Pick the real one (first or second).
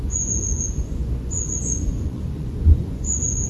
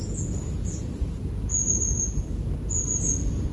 second